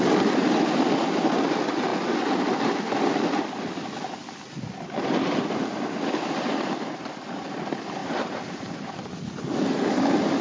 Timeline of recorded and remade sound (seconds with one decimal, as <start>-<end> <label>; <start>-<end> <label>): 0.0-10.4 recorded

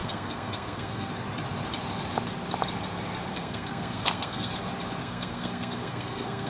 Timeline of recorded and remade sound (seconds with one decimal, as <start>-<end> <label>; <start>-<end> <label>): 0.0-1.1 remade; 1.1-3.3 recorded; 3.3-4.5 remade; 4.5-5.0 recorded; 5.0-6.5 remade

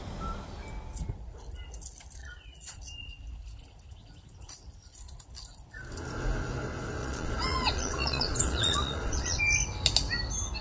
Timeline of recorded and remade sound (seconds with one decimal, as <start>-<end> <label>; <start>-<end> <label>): 0.0-2.2 recorded; 2.2-2.8 remade; 2.8-7.0 recorded; 7.0-9.4 remade; 9.4-10.6 recorded

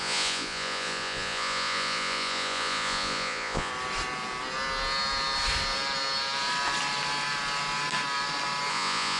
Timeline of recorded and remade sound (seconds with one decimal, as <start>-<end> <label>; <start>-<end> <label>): 0.0-3.7 remade; 3.7-8.7 recorded; 8.7-9.2 remade

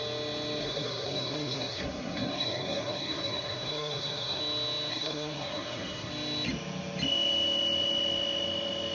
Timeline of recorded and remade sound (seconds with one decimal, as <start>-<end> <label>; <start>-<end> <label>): 0.0-0.6 recorded; 0.6-4.4 remade; 4.4-4.9 recorded; 4.9-6.1 remade; 6.1-8.9 recorded

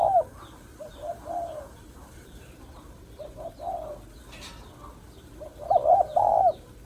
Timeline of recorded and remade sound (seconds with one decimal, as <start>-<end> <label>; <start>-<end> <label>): 0.0-1.0 recorded; 1.0-3.5 remade; 3.5-6.9 recorded

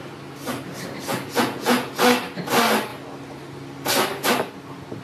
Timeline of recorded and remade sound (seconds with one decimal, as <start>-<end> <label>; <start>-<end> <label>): 0.0-1.1 recorded; 1.1-1.9 remade; 1.9-5.0 recorded

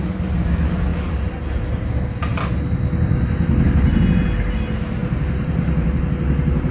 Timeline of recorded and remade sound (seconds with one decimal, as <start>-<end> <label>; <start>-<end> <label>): 0.0-5.0 recorded; 5.0-6.0 remade; 6.0-6.7 recorded